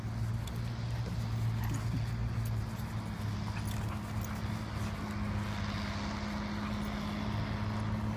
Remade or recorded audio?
recorded